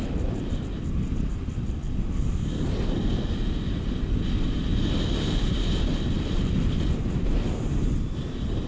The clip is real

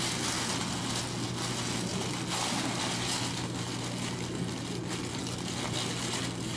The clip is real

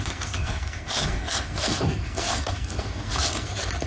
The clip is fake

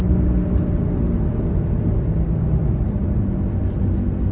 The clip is real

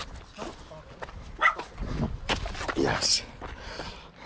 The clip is real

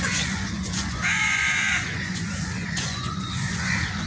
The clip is fake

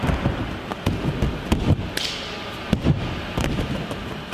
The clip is real